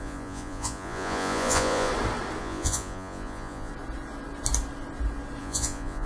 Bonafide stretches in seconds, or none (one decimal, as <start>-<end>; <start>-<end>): 1.9-2.4; 3.7-5.4